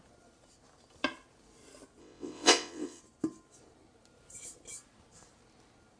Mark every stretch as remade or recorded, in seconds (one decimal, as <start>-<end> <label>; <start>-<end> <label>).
0.0-2.0 recorded; 2.0-3.0 remade; 3.0-6.0 recorded